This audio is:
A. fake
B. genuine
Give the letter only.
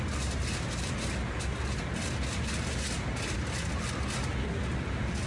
B